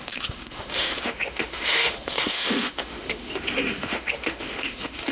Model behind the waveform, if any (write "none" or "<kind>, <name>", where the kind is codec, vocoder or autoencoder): autoencoder, DAC-VAE